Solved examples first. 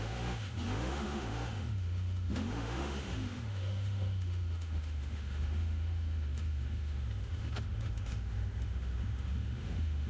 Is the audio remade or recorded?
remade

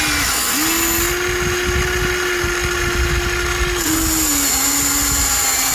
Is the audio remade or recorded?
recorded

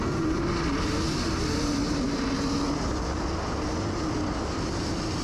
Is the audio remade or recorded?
recorded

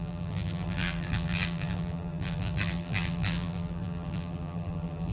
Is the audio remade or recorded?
remade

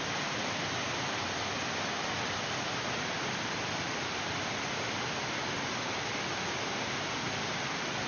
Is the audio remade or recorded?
recorded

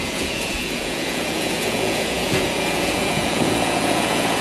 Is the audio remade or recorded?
remade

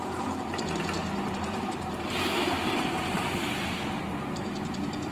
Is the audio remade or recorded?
remade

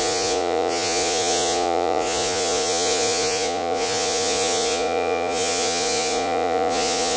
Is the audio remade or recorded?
remade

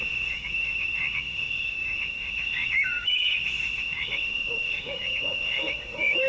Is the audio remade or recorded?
remade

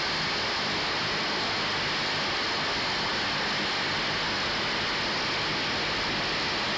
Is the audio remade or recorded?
recorded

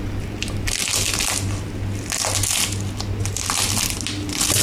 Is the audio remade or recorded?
recorded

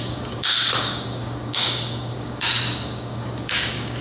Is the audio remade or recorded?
remade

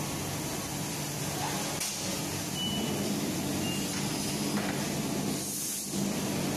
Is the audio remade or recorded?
recorded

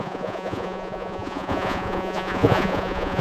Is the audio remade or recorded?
remade